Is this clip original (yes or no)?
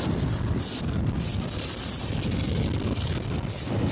yes